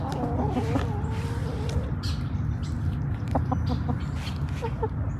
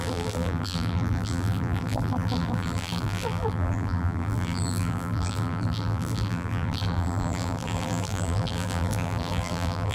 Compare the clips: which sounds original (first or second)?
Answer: first